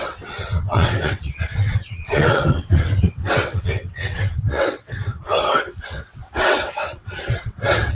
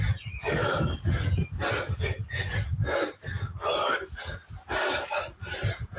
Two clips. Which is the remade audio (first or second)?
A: first